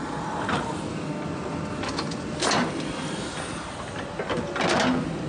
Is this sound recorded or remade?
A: recorded